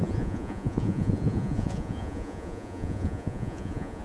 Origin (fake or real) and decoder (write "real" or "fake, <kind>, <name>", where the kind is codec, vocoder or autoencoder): fake, vocoder, Vocos